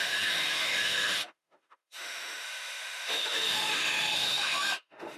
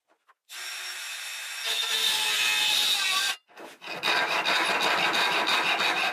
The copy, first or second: first